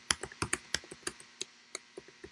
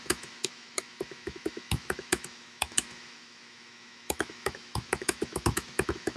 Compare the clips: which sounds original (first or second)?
first